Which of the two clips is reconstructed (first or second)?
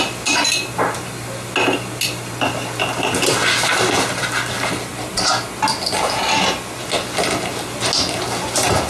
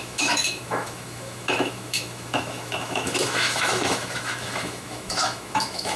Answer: second